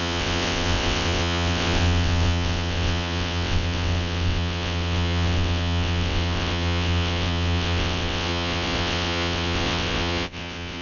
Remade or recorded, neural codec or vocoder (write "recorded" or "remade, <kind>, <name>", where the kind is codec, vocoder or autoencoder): remade, vocoder, WaveNeXt